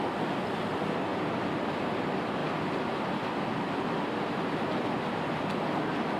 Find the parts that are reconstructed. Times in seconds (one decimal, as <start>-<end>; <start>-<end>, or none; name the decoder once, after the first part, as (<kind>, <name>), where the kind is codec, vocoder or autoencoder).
2.4-3.3 (vocoder, BigVGAN v2)